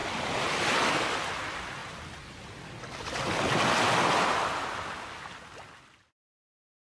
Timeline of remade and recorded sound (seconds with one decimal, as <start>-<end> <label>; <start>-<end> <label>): 0.0-6.8 recorded

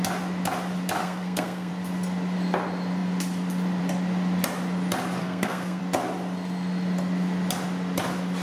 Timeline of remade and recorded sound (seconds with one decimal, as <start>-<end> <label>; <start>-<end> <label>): 0.0-1.0 recorded; 1.0-1.7 remade; 1.7-5.2 recorded; 5.2-5.8 remade; 5.8-8.4 recorded

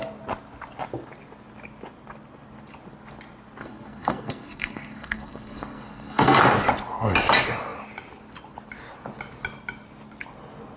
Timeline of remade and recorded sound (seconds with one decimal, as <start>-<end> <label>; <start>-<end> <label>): 0.0-3.6 recorded; 3.6-6.4 remade; 6.4-10.8 recorded

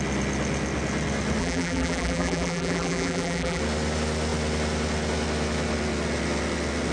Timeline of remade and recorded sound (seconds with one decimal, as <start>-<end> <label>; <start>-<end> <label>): 0.0-1.4 recorded; 1.4-3.6 remade; 3.6-6.9 recorded

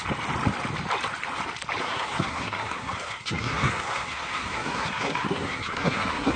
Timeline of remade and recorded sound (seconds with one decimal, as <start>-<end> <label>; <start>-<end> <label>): 0.0-1.8 recorded; 1.8-6.4 remade